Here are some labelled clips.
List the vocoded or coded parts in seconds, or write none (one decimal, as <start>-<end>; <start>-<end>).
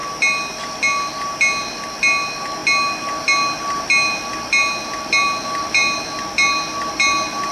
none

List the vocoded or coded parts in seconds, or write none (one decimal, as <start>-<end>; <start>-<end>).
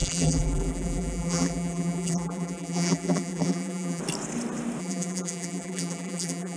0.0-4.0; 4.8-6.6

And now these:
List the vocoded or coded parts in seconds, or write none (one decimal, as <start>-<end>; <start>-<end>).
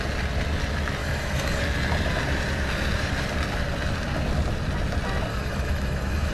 1.0-1.6; 5.3-6.3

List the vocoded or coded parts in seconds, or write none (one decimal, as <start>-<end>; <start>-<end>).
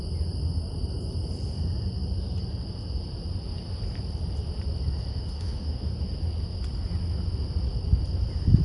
5.1-5.9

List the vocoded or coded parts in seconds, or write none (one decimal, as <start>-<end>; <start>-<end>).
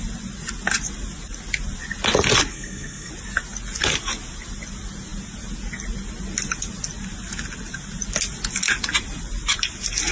2.5-3.1